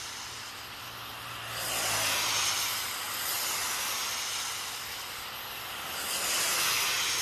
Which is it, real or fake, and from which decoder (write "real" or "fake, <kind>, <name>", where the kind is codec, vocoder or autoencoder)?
real